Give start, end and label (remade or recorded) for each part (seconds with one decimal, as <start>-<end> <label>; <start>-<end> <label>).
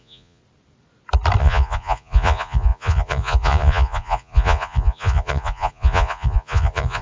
0.0-0.4 remade; 0.4-1.4 recorded; 1.4-7.0 remade